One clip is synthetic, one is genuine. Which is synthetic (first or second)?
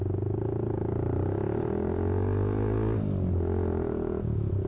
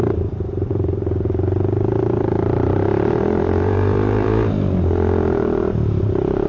second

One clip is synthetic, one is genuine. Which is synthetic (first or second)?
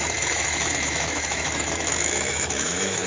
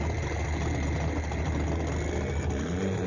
first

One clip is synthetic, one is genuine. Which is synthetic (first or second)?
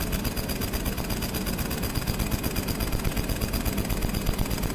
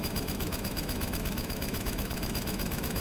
second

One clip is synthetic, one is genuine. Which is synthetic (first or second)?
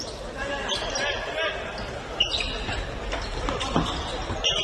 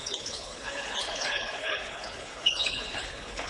second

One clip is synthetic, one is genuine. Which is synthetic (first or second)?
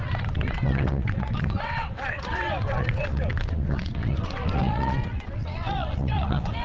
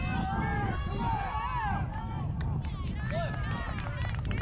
first